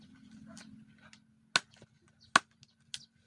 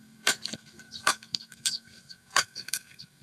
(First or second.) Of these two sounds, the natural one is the first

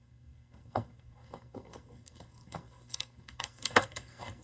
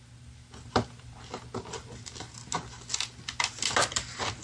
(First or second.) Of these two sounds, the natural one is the second